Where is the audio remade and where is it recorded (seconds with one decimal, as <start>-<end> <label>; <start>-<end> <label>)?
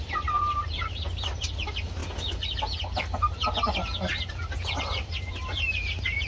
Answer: 0.0-2.0 remade; 2.0-4.8 recorded; 4.8-6.3 remade